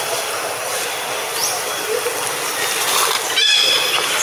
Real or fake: real